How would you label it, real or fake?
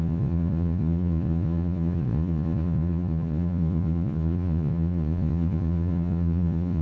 fake